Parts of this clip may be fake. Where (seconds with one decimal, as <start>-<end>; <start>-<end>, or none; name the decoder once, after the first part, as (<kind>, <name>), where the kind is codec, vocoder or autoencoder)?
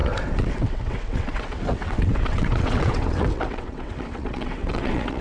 0.0-5.2 (vocoder, WaveNeXt)